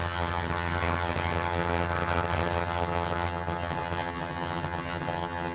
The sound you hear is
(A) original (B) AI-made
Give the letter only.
B